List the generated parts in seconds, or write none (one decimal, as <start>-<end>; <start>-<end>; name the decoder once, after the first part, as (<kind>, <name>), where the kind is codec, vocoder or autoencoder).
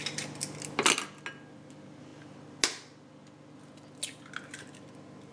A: none